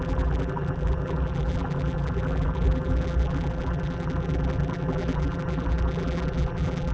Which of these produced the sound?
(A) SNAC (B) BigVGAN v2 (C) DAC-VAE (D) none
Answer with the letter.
B